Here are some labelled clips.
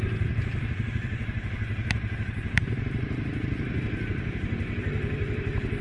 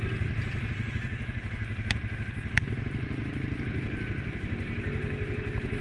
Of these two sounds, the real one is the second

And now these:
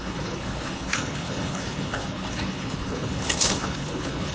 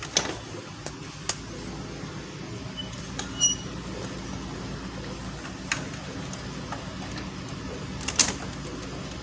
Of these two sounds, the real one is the second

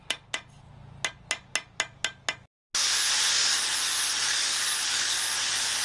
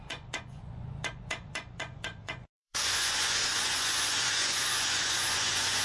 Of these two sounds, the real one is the first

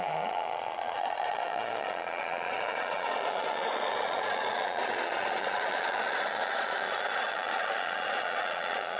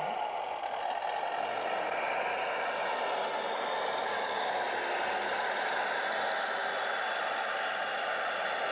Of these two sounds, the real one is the second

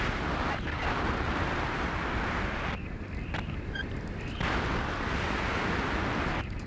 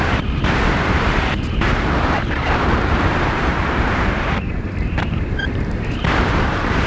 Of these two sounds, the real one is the first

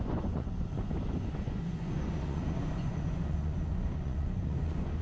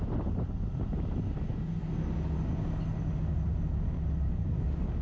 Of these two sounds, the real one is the second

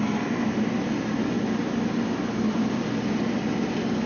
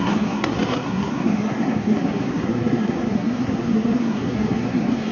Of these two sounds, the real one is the first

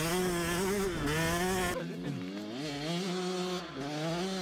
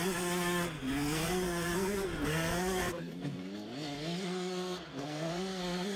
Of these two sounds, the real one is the first